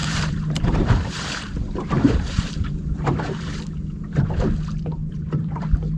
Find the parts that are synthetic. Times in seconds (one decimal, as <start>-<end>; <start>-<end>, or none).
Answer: 0.0-3.6; 4.9-6.0

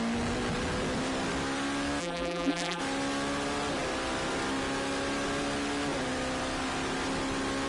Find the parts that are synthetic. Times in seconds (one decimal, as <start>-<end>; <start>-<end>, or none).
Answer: 2.0-2.8

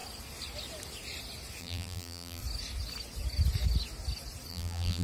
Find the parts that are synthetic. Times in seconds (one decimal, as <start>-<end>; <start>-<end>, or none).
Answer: 1.6-2.4; 4.5-5.0

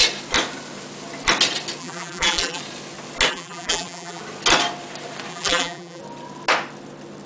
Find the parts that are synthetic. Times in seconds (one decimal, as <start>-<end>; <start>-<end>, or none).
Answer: 1.8-2.6; 3.3-4.2; 5.3-6.0

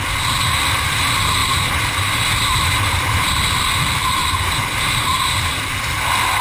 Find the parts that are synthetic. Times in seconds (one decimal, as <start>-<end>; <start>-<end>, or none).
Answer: 1.4-3.3; 4.2-6.0